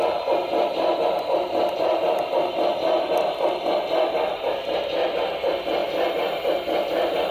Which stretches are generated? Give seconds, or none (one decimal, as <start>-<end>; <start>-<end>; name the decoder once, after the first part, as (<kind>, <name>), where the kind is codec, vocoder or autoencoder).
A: none